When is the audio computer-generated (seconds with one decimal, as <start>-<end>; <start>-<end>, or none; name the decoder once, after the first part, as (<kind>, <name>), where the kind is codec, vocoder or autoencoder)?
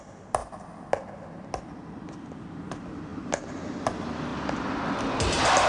none